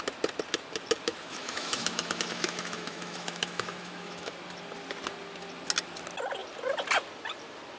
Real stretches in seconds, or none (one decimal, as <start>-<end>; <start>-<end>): 0.0-1.1; 4.3-7.8